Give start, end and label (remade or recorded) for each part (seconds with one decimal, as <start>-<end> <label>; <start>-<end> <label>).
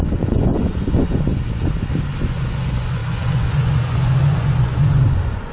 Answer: 0.0-1.3 remade; 1.3-2.2 recorded; 2.2-5.5 remade